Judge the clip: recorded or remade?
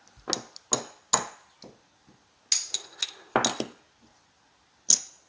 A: recorded